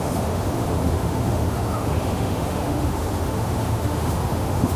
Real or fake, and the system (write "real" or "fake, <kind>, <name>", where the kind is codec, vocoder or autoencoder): fake, autoencoder, DAC-VAE